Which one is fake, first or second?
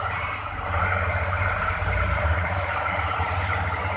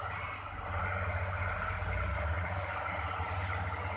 first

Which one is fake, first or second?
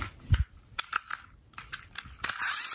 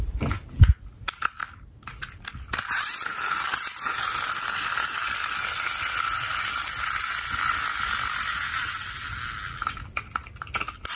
first